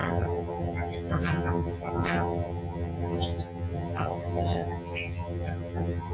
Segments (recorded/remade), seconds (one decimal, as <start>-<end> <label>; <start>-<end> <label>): 0.0-6.1 remade